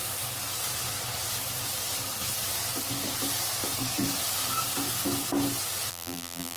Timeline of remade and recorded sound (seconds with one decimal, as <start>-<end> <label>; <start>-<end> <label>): 0.0-5.9 recorded; 5.9-6.6 remade

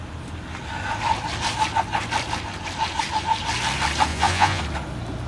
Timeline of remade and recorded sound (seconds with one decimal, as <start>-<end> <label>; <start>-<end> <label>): 0.0-4.1 recorded; 4.1-4.6 remade; 4.6-5.3 recorded

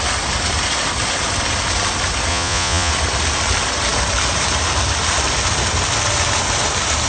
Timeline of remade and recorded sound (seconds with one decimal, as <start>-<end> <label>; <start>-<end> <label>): 0.0-2.3 recorded; 2.3-2.9 remade; 2.9-7.1 recorded